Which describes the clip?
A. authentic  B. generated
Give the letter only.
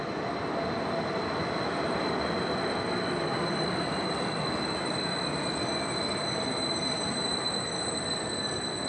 A